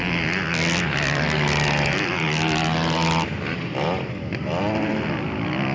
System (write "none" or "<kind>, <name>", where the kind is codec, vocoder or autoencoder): none